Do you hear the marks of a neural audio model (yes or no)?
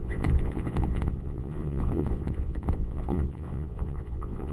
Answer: yes